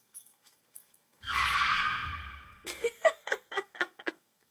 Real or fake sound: fake